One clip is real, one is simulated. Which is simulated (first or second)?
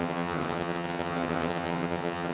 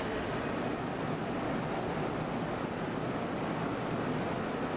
first